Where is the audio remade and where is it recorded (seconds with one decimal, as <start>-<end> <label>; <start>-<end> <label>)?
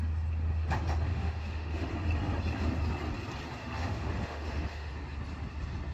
0.0-1.1 recorded; 1.1-1.9 remade; 1.9-3.6 recorded; 3.6-4.9 remade; 4.9-5.9 recorded